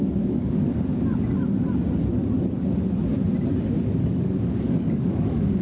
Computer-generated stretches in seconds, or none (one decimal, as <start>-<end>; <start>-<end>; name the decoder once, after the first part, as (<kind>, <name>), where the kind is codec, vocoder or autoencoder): 0.0-0.7 (codec, DAC); 4.1-5.6